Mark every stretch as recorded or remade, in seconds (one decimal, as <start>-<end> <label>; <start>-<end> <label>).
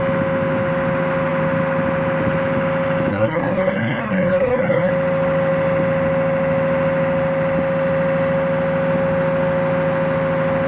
0.0-3.1 recorded; 3.1-4.9 remade; 4.9-10.7 recorded